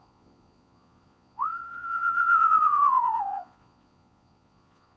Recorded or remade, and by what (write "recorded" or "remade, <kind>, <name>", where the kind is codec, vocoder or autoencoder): remade, vocoder, Vocos